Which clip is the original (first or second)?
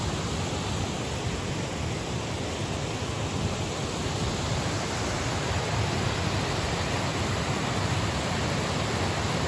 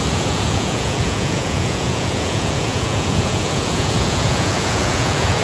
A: first